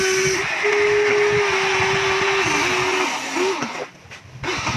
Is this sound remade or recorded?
recorded